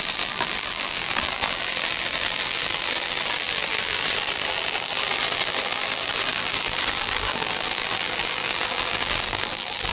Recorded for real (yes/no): no